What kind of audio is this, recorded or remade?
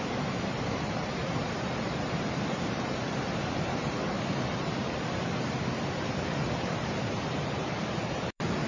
remade